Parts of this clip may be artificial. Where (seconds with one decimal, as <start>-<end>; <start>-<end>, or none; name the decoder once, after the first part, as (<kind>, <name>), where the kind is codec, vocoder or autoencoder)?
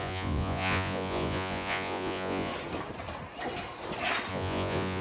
0.0-2.5 (vocoder, Vocos); 4.3-5.0